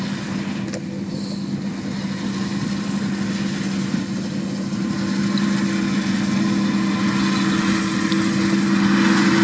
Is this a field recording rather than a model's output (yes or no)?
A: yes